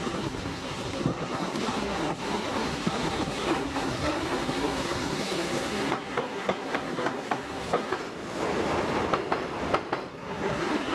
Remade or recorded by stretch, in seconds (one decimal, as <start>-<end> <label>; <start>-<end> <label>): 0.0-8.0 remade; 8.0-10.1 recorded; 10.1-10.9 remade